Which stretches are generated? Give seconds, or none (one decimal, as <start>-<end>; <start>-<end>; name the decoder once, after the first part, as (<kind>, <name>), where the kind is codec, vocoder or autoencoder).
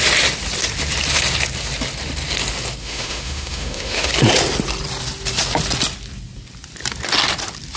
2.8-4.1 (autoencoder, DAC-VAE)